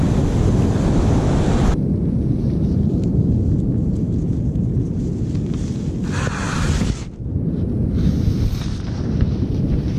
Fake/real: real